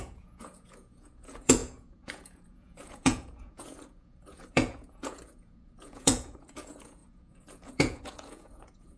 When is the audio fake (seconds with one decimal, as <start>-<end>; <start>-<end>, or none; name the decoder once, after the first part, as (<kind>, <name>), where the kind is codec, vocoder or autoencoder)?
0.0-9.0 (vocoder, Vocos)